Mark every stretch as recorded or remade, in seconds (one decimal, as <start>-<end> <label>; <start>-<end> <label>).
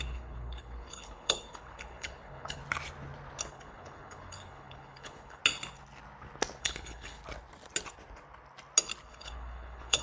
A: 0.0-2.6 remade; 2.6-3.5 recorded; 3.5-5.4 remade; 5.4-6.6 recorded; 6.6-7.2 remade; 7.2-9.1 recorded; 9.1-10.0 remade